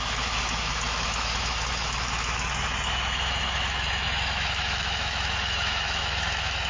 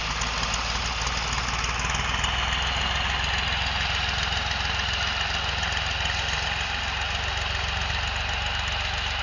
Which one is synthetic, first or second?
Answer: first